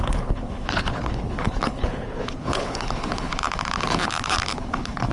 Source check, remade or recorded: remade